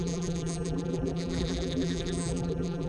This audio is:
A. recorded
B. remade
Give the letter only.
B